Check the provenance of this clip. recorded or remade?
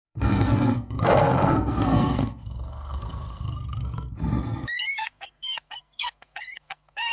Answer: remade